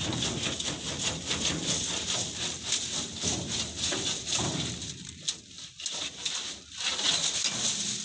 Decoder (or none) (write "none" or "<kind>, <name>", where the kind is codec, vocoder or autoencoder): none